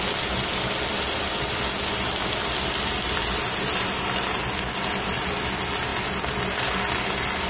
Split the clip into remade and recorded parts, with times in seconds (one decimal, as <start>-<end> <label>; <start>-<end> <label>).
0.0-7.5 recorded